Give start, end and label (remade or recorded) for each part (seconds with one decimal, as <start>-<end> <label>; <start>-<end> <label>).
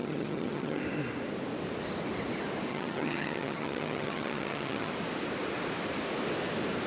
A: 0.0-0.8 remade; 0.8-2.7 recorded; 2.7-4.9 remade; 4.9-6.9 recorded